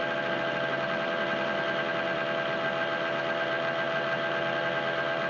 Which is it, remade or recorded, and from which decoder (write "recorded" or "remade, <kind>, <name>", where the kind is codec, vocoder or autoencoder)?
recorded